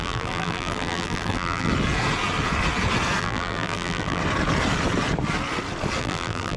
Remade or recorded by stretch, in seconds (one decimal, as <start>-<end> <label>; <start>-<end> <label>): 0.0-1.7 remade; 1.7-3.2 recorded; 3.2-4.2 remade; 4.2-6.0 recorded; 6.0-6.6 remade